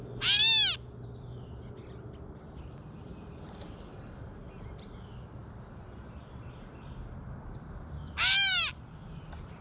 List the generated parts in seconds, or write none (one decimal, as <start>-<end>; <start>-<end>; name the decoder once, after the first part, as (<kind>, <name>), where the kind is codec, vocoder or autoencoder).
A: 5.4-9.6 (vocoder, BigVGAN v2)